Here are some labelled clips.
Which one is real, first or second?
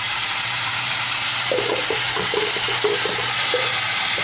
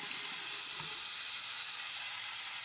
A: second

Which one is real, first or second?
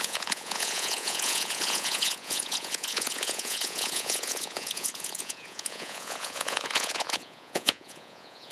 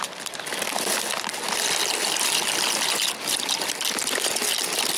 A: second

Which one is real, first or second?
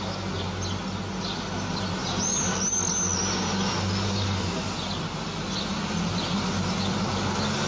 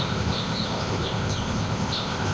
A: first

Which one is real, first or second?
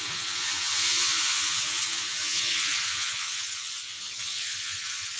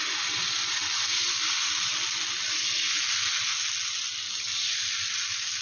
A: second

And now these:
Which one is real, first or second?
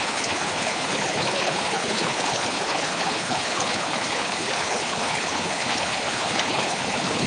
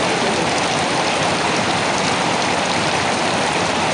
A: second